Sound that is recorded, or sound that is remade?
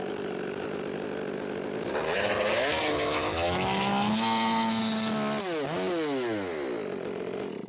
recorded